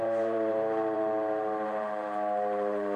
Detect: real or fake fake